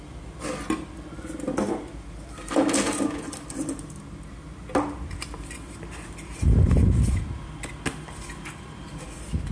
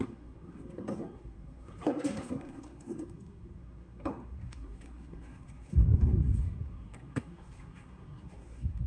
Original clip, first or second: first